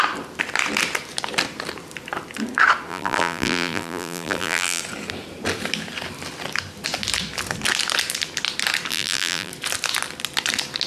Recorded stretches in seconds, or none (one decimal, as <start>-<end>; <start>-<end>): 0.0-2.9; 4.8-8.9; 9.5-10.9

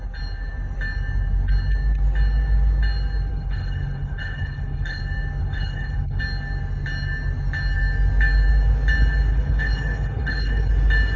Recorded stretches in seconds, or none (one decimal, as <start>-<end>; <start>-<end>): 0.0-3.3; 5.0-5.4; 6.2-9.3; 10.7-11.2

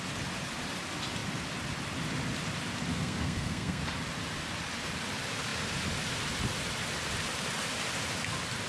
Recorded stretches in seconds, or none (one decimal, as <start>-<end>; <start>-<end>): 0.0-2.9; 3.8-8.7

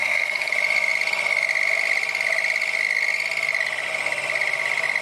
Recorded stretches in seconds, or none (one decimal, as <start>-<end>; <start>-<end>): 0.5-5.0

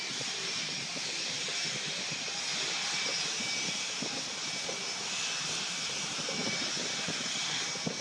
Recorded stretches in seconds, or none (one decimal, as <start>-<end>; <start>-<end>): 0.0-8.0

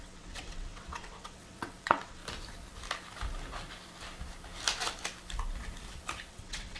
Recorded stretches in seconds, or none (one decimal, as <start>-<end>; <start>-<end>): 2.2-6.3